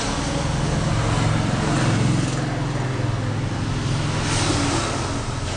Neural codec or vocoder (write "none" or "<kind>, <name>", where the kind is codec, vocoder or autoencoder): none